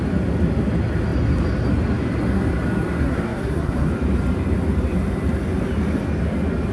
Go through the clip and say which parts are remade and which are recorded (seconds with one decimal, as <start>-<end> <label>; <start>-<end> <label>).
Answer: 0.0-3.0 recorded; 3.0-3.9 remade; 3.9-6.7 recorded

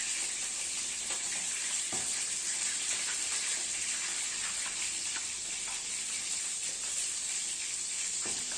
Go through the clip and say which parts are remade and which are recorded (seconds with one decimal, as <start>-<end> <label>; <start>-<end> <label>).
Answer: 0.0-8.6 recorded